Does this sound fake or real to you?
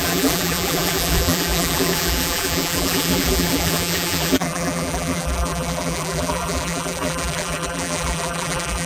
fake